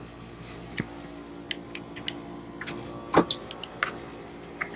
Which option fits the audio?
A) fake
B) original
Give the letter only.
B